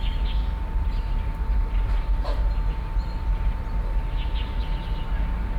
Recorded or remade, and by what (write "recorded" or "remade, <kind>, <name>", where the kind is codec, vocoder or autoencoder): recorded